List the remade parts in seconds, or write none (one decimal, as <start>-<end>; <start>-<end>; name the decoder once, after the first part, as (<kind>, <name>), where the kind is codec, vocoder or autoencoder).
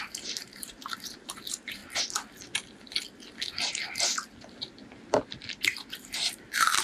0.0-1.8 (vocoder, BigVGAN v2); 5.9-6.8